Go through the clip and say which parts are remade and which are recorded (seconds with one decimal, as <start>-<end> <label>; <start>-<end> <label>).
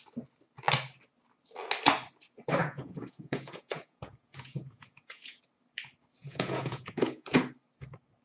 0.0-2.6 recorded; 2.6-5.4 remade; 5.4-6.2 recorded; 6.2-7.4 remade; 7.4-8.2 recorded